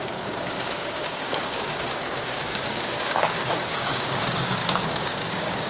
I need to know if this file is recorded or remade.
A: remade